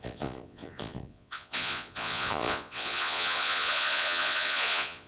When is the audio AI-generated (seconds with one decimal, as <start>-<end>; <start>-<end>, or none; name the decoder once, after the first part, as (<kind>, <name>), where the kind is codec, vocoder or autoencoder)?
0.0-5.1 (vocoder, Vocos)